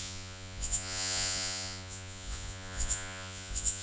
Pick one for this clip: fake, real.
fake